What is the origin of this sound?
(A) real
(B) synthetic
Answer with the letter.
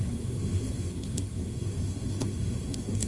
B